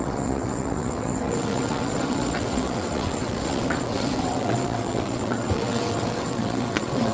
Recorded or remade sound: remade